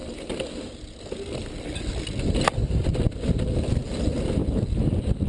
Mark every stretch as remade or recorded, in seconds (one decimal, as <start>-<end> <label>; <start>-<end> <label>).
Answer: 0.0-5.3 recorded